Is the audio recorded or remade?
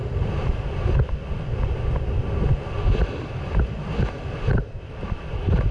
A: recorded